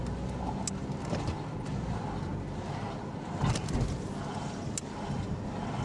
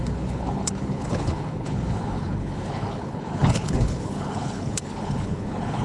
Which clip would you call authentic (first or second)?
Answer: first